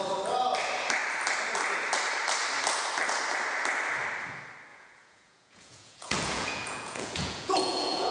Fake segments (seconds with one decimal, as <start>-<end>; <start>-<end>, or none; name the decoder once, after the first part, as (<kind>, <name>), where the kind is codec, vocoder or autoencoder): 4.7-8.1 (vocoder, Vocos)